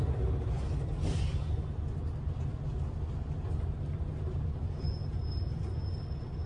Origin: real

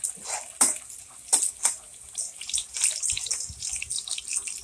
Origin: real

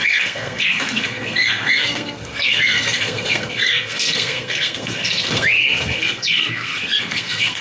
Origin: fake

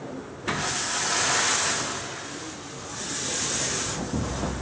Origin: real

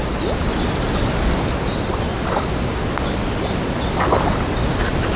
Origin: real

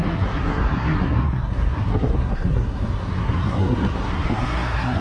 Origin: fake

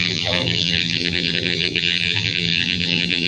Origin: fake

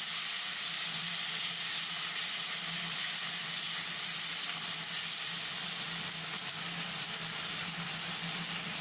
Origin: real